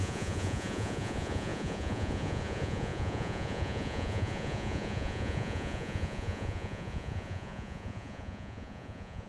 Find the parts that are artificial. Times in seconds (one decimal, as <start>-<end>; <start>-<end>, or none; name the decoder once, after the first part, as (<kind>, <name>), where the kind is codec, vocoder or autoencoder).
0.0-9.3 (vocoder, Vocos)

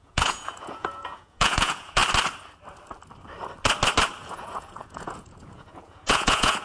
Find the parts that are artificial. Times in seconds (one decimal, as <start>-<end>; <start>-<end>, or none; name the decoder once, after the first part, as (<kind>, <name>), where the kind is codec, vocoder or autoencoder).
0.0-2.0 (vocoder, Vocos); 4.2-6.6

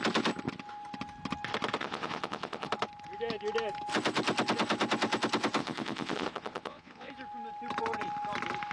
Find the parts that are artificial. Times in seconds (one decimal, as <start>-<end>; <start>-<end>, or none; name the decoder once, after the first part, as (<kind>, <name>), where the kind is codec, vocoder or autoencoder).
1.8-2.7 (vocoder, Vocos); 5.6-7.1

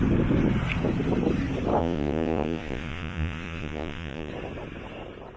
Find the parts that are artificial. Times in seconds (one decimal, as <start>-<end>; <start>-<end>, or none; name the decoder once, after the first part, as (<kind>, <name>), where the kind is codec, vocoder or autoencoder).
1.8-4.3 (vocoder, Vocos)

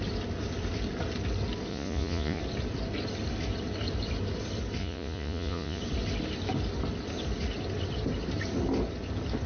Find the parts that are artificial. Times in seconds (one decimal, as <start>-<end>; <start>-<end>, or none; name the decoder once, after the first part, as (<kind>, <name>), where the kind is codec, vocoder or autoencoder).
1.7-2.4 (vocoder, Vocos); 4.8-5.8

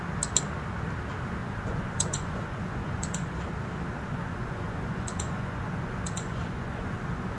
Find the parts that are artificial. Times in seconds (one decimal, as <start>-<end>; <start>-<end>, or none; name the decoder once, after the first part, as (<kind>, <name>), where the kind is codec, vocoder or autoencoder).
1.4-3.3 (vocoder, Vocos); 4.1-7.4

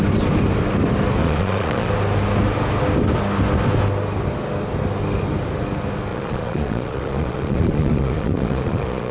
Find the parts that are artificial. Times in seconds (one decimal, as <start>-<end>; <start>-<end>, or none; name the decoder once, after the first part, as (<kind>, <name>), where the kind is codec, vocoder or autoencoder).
1.2-1.9 (vocoder, Vocos); 6.1-9.1

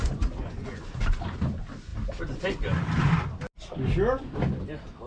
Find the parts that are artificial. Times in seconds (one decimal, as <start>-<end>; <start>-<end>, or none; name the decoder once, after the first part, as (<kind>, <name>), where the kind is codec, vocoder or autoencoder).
0.0-1.0 (vocoder, Vocos)